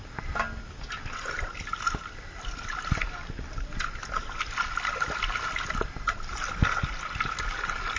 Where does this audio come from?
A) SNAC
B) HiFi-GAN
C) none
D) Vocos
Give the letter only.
C